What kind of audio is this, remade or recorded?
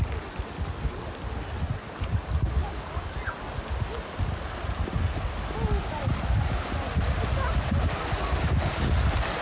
recorded